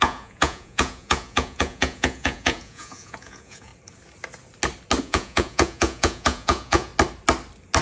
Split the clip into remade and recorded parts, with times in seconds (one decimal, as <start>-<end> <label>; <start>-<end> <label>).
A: 0.0-3.7 remade; 3.7-5.0 recorded; 5.0-6.9 remade; 6.9-7.8 recorded